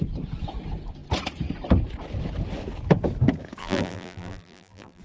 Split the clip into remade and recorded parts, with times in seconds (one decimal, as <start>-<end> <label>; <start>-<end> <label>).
0.0-3.6 recorded; 3.6-5.0 remade